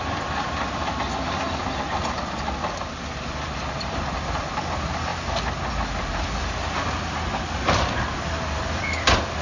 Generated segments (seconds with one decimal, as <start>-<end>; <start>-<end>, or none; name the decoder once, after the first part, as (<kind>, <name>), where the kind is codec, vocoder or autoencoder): 0.0-5.1 (vocoder, BigVGAN v2); 5.7-9.4